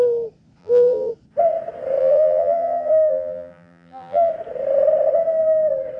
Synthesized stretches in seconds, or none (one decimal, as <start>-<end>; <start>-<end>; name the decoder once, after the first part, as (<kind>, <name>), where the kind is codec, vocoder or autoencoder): 0.6-1.1 (vocoder, BigVGAN v2); 2.0-4.3